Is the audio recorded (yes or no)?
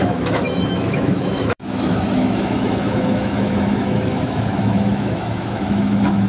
no